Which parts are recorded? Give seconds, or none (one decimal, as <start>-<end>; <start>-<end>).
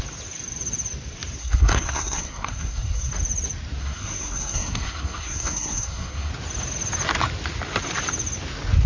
0.0-1.4; 3.1-3.8; 6.3-8.9